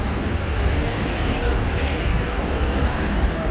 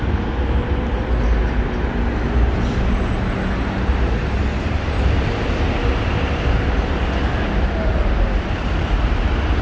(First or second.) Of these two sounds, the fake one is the first